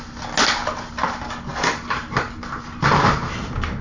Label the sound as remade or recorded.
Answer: recorded